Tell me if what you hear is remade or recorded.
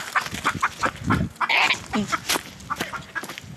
recorded